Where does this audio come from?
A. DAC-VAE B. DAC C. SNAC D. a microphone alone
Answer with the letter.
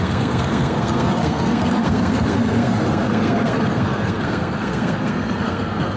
C